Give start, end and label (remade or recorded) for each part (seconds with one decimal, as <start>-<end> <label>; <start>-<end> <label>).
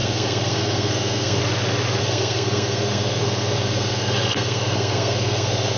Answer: 0.0-1.4 remade; 1.4-2.0 recorded; 2.0-5.8 remade